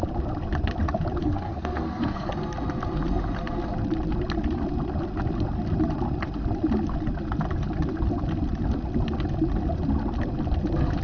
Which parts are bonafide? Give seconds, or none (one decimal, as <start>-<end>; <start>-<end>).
0.0-1.2; 2.3-11.0